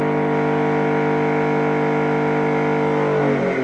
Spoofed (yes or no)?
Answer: no